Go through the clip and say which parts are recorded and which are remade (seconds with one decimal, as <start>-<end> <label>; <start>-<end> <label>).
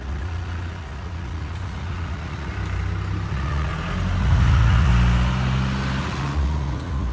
0.0-2.5 remade; 2.5-3.3 recorded; 3.3-3.7 remade; 3.7-4.2 recorded; 4.2-4.9 remade; 4.9-6.0 recorded; 6.0-7.1 remade